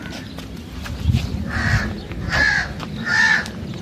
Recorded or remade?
recorded